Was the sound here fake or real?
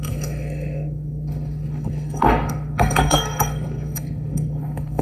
fake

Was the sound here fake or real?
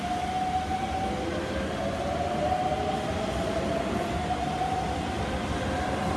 real